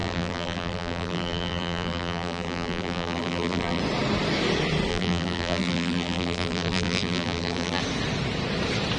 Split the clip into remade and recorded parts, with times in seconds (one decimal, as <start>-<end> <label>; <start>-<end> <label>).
0.0-3.8 remade; 3.8-4.9 recorded; 4.9-7.8 remade; 7.8-9.0 recorded